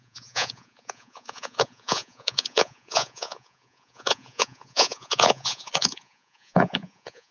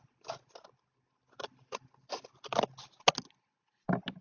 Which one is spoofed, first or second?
first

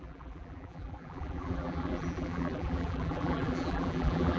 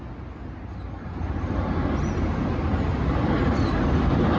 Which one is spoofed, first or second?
first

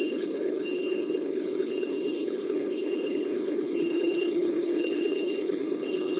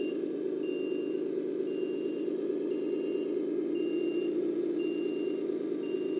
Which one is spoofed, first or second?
first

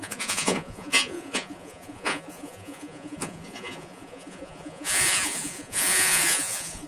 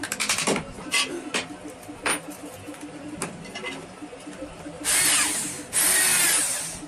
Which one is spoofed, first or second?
first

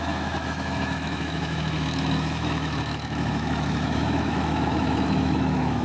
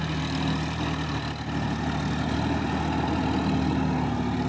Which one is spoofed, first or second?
first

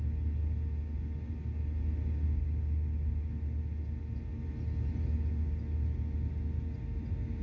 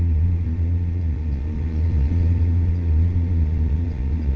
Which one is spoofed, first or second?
second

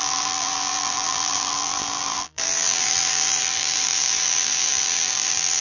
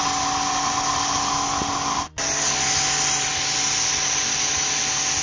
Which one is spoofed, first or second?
first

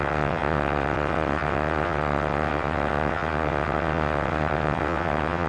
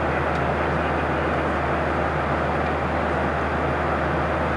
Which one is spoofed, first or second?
first